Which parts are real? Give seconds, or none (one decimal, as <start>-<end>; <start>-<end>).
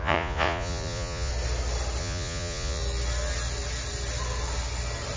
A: 1.3-2.0; 2.8-5.2